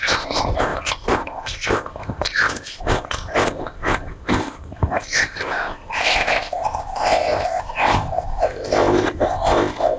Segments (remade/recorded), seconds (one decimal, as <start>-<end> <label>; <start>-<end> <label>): 0.0-10.0 remade